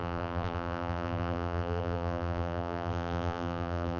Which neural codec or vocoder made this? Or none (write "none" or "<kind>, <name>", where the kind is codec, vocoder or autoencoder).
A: vocoder, BigVGAN v2